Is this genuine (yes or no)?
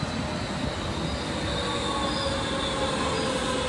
yes